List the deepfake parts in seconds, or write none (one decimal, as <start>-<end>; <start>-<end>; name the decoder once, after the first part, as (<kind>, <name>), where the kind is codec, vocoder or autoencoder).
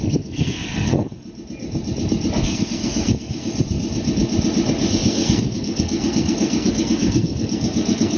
0.0-1.2 (codec, SNAC); 2.4-3.5; 4.9-8.2